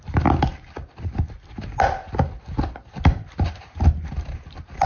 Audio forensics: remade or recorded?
recorded